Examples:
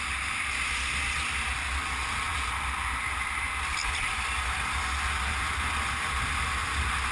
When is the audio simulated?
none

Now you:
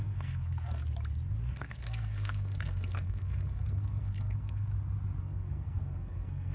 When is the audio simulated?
0.0-0.8 (codec, SNAC); 1.5-4.7; 5.2-6.5

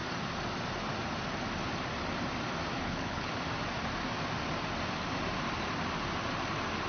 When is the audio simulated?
2.8-3.3 (codec, HILCodec)

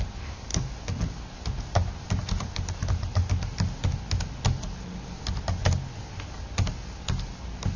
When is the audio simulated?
none

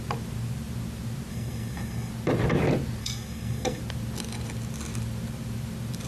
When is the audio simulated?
1.3-2.1 (codec, SNAC); 3.0-3.8

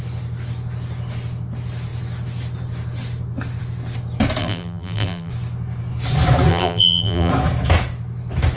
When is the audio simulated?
4.4-5.3 (vocoder, BigVGAN v2); 6.5-7.3

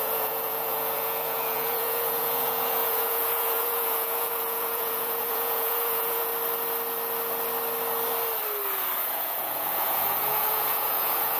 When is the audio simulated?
0.0-6.3 (vocoder, Vocos); 9.0-11.4